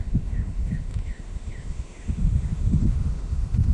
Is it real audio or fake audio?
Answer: fake